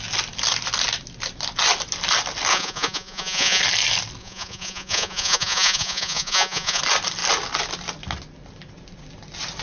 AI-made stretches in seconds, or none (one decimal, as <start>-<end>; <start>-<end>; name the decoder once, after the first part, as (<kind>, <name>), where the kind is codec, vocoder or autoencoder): 2.5-3.6 (vocoder, Vocos); 4.2-6.8